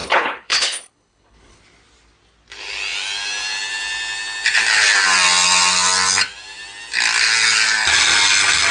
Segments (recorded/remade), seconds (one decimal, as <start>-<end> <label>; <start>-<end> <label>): 0.0-1.6 remade; 1.6-8.7 recorded